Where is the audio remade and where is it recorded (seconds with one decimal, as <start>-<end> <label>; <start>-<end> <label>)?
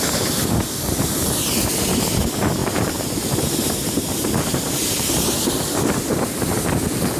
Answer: 0.0-2.6 recorded; 2.6-5.1 remade; 5.1-7.2 recorded